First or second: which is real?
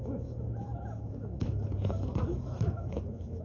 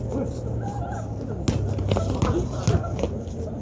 second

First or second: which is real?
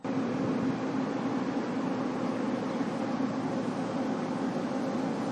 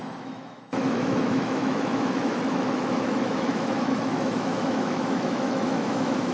first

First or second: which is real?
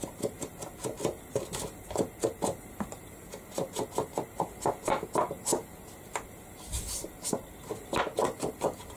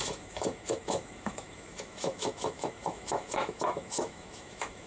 first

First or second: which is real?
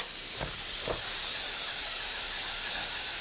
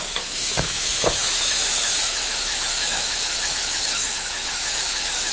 first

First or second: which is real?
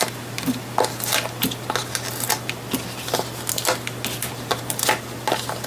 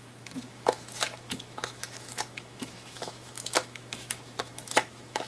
first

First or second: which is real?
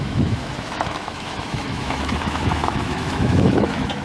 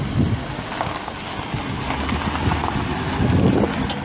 second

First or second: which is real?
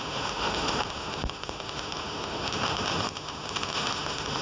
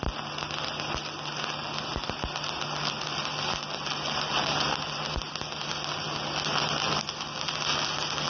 second